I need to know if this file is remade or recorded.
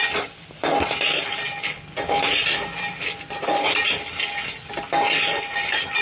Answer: recorded